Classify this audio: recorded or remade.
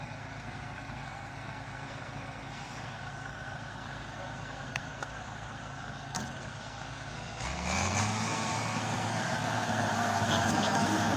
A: remade